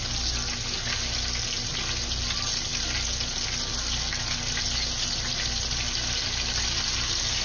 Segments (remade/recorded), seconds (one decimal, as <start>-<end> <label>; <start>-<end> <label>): 0.0-7.4 recorded